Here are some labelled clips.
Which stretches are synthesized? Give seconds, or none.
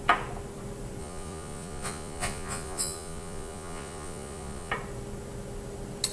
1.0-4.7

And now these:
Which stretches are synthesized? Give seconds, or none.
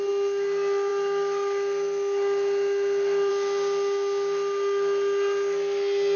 none